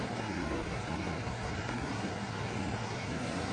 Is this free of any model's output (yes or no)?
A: no